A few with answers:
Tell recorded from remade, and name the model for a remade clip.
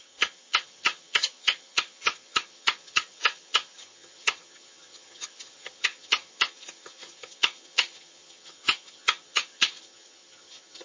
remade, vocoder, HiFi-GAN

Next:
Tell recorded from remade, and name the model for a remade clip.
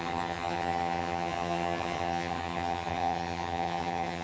remade, vocoder, HiFi-GAN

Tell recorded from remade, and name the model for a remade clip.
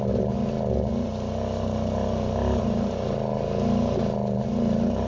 recorded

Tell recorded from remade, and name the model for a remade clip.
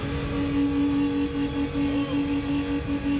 recorded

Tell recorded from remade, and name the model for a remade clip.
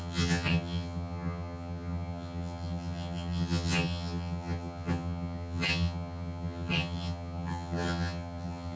remade, vocoder, HiFi-GAN